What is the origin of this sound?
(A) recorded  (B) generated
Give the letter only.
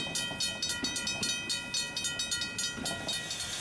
A